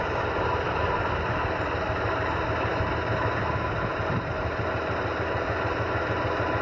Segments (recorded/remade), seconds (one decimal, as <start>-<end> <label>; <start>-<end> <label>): 0.0-6.6 recorded

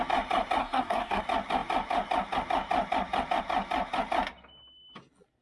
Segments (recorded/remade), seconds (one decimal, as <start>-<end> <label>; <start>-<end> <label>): 0.0-0.6 recorded; 0.6-1.2 remade; 1.2-5.4 recorded

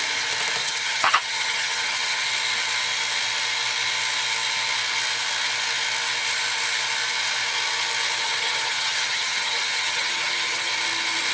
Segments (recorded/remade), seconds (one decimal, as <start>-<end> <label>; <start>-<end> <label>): 0.0-0.6 recorded; 0.6-2.3 remade; 2.3-8.2 recorded; 8.2-10.7 remade; 10.7-11.3 recorded

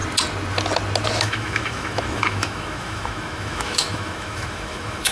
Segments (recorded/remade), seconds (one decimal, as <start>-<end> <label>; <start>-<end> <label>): 0.0-1.2 recorded; 1.2-5.1 remade

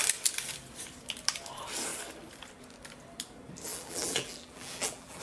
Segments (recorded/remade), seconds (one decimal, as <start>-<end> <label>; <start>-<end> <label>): 0.0-3.7 recorded; 3.7-5.2 remade